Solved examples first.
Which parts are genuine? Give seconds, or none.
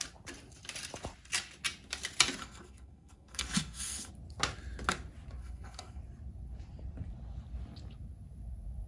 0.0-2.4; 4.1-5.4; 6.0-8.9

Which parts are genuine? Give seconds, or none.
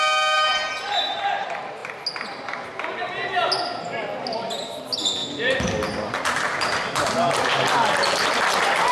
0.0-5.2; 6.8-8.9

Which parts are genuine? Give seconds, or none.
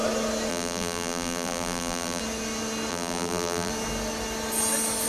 0.0-0.5; 2.2-2.9; 3.7-5.1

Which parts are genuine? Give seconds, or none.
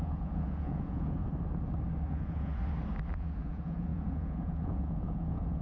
1.2-2.1; 2.5-3.1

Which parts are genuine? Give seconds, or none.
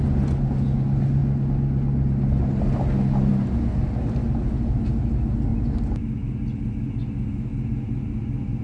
0.0-8.6